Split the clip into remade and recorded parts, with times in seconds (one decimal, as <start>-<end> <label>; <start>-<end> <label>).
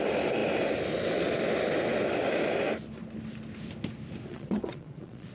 0.0-4.3 recorded; 4.3-5.3 remade